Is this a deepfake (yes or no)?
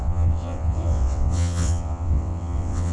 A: yes